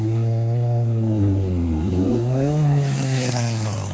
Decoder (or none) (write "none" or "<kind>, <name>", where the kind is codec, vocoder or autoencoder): codec, SNAC